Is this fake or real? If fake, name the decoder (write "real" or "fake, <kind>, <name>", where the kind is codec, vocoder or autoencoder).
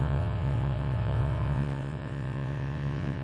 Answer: fake, vocoder, WaveNeXt